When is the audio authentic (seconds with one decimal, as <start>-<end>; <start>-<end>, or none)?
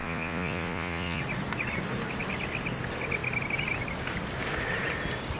1.2-5.4